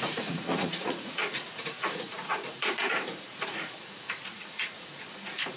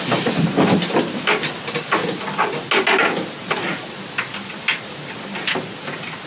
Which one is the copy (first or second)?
first